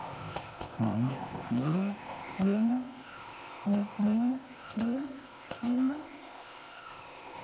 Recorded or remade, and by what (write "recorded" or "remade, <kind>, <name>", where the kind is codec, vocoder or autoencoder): remade, codec, ZipCodec